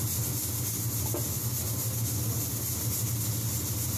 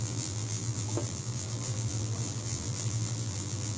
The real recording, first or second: first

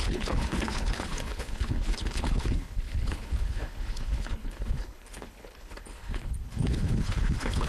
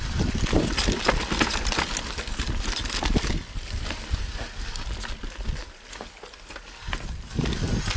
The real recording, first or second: second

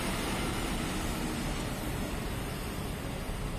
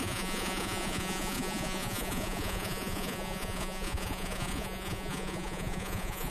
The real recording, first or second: first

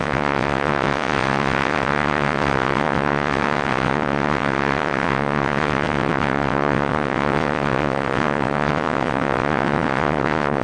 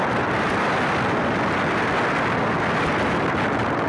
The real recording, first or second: second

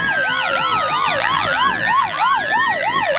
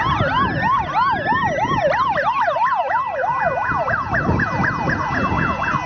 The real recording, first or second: second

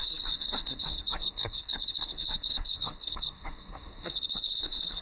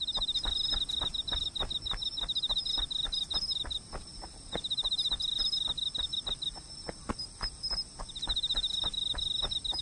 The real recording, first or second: second